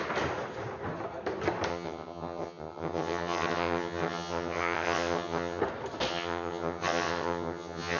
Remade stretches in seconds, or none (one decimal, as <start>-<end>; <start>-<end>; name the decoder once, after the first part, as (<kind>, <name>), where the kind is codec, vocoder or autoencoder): 1.7-5.6 (vocoder, HiFi-GAN); 6.1-8.0